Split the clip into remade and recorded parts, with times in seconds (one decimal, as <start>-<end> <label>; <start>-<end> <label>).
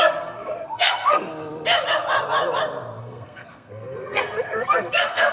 0.0-1.3 remade; 1.3-3.0 recorded; 3.0-5.3 remade